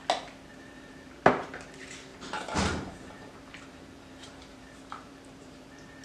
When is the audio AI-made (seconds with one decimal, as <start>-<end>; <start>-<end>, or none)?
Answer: 0.5-1.2; 2.1-6.0